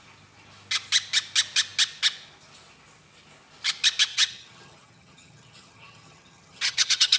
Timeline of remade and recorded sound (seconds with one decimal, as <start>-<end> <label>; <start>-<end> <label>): 0.0-4.1 recorded; 4.1-7.2 remade